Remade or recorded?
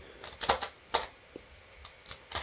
recorded